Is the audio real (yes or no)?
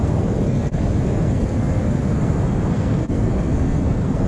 no